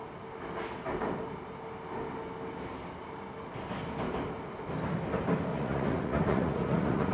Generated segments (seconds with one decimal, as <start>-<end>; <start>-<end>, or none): 5.5-7.1